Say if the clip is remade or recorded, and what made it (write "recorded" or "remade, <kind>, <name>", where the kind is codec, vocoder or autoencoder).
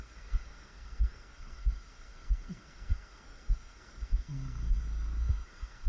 remade, codec, SNAC